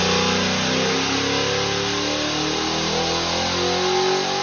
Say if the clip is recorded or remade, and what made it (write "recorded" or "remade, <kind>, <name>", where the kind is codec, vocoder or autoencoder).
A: recorded